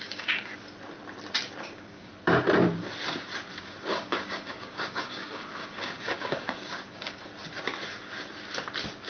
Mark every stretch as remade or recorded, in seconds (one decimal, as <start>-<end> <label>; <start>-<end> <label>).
0.0-0.5 remade; 0.5-1.6 recorded; 1.6-2.1 remade; 2.1-3.6 recorded; 3.6-7.3 remade; 7.3-9.1 recorded